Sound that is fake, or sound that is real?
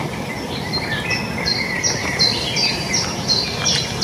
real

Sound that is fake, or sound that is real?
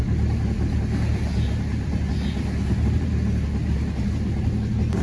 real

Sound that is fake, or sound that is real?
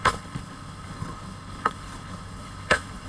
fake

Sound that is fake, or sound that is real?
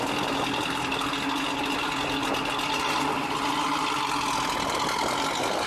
real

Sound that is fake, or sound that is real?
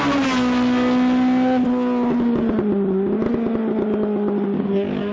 real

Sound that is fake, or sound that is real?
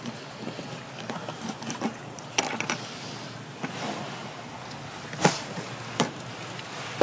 real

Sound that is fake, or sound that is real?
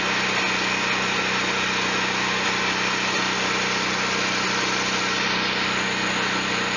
real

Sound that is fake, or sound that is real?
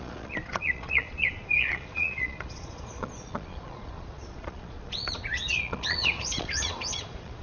fake